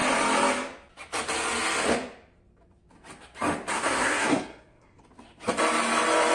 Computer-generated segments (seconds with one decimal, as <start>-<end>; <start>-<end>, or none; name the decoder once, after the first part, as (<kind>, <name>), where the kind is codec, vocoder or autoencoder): 3.7-5.0 (codec, SNAC)